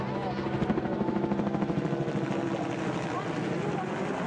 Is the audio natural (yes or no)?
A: yes